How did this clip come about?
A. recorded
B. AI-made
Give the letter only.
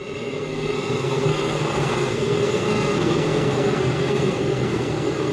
B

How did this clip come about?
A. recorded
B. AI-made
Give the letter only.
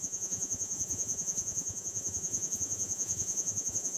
B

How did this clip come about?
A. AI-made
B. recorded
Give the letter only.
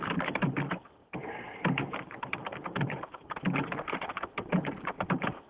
A